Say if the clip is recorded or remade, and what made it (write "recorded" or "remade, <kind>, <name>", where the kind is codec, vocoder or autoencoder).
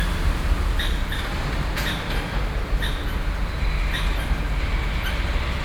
recorded